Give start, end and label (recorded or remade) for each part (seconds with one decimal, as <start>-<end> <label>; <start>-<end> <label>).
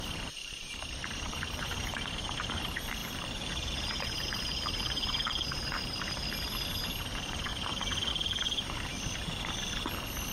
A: 0.0-7.5 remade; 7.5-8.1 recorded; 8.1-8.9 remade; 8.9-10.3 recorded